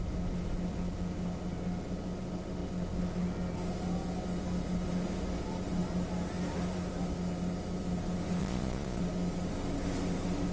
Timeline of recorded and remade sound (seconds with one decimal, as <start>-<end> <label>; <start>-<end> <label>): 0.0-8.4 recorded; 8.4-9.0 remade; 9.0-10.5 recorded